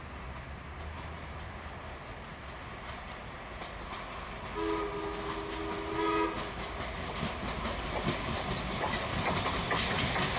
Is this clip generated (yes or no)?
no